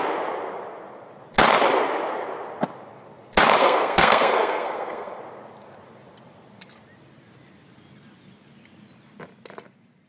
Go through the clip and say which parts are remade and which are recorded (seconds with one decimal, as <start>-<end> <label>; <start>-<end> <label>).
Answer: 0.0-3.6 recorded; 3.6-5.2 remade; 5.2-10.1 recorded